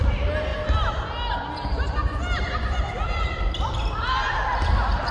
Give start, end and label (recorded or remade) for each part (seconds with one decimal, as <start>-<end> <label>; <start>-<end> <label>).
0.0-0.5 recorded; 0.5-3.6 remade; 3.6-5.1 recorded

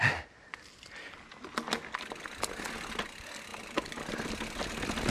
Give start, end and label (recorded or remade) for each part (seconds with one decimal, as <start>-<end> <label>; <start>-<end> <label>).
0.0-5.1 recorded

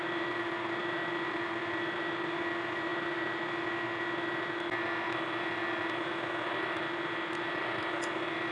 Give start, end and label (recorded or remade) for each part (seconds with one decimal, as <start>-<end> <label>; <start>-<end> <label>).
0.0-8.5 recorded

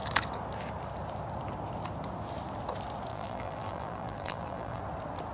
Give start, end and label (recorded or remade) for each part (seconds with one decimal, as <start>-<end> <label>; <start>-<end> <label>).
0.0-3.1 recorded; 3.1-4.8 remade; 4.8-5.3 recorded

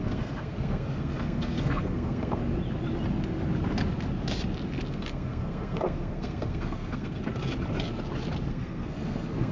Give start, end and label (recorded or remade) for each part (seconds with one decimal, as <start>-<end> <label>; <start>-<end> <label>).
0.0-2.4 remade; 2.4-4.9 recorded; 4.9-7.2 remade; 7.2-8.5 recorded; 8.5-9.5 remade

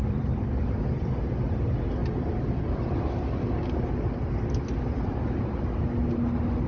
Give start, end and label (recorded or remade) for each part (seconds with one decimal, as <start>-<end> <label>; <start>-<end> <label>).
0.0-0.5 remade; 0.5-6.7 recorded

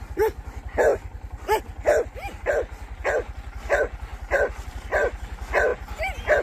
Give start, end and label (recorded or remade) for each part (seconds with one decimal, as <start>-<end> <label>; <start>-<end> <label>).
0.0-6.4 recorded

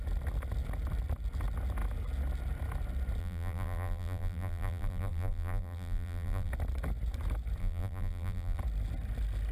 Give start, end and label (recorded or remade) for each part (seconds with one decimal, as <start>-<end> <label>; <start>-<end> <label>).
0.0-3.2 recorded; 3.2-6.5 remade; 6.5-7.6 recorded; 7.6-8.6 remade; 8.6-9.5 recorded